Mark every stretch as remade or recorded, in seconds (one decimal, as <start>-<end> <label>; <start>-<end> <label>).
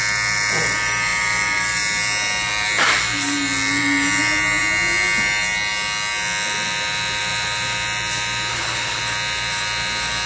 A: 0.0-8.5 recorded; 8.5-9.0 remade; 9.0-10.3 recorded